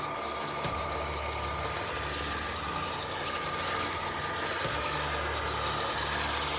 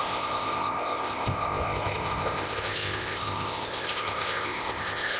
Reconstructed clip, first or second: second